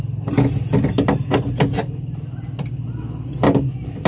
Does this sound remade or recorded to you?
recorded